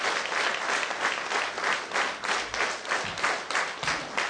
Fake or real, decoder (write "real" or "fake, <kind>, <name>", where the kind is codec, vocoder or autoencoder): real